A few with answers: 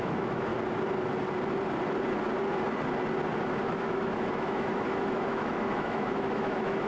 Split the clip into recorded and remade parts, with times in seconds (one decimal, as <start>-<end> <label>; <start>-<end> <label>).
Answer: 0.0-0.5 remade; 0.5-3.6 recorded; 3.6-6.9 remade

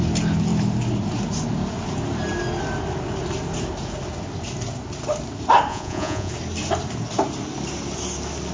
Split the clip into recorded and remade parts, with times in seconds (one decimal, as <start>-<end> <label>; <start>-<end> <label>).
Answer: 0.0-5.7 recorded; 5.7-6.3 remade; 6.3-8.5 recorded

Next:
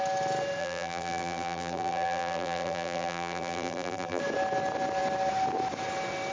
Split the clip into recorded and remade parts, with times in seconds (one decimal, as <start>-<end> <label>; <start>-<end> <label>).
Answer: 0.0-0.6 recorded; 0.6-4.2 remade; 4.2-6.3 recorded

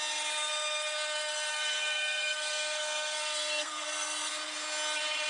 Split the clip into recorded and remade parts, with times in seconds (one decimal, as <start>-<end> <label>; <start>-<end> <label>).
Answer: 0.0-1.5 recorded; 1.5-4.3 remade; 4.3-5.3 recorded

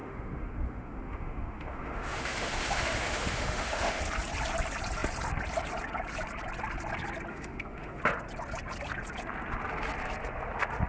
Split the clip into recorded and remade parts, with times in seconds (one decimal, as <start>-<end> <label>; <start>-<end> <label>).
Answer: 0.0-4.0 remade; 4.0-7.3 recorded; 7.3-8.0 remade; 8.0-10.9 recorded

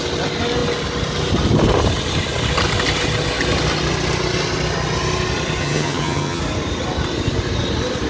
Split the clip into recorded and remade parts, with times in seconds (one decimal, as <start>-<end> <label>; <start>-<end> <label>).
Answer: 0.0-5.6 recorded; 5.6-6.4 remade; 6.4-8.1 recorded